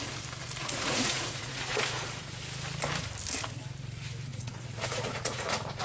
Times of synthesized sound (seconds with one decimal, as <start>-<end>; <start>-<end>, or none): 0.6-2.4; 4.3-5.8